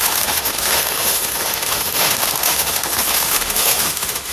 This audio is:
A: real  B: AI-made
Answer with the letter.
B